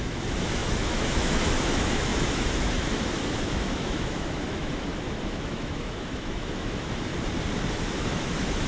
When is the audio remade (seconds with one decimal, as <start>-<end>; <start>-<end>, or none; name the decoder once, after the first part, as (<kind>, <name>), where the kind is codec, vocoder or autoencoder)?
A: 0.0-7.1 (autoencoder, DAC-VAE); 7.7-8.7